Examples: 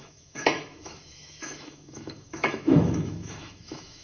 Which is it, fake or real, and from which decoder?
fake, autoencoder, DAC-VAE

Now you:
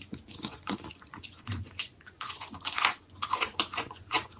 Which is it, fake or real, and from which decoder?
fake, vocoder, Vocos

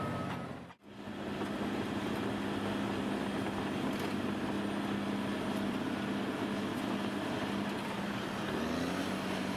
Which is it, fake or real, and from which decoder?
real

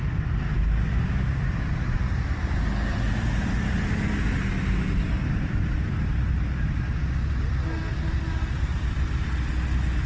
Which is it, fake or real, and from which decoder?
real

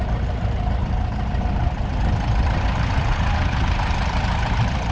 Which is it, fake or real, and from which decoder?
real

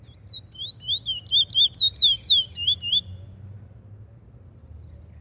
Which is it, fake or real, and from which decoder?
real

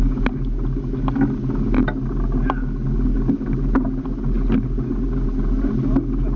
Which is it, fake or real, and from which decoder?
real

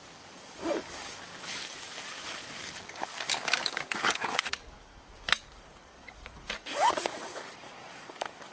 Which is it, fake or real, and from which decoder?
fake, codec, DAC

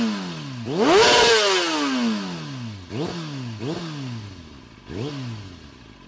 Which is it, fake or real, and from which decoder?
real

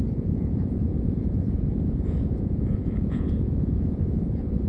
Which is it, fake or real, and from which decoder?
fake, vocoder, Vocos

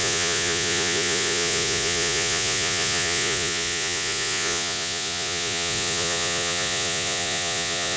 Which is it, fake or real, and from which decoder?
fake, vocoder, Vocos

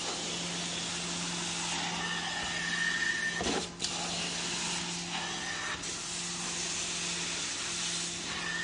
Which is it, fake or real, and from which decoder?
real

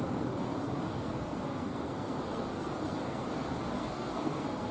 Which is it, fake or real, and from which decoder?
fake, codec, SNAC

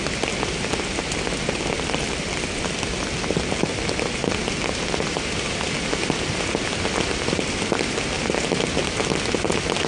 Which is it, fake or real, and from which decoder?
real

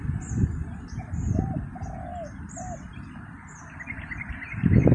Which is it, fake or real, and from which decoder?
real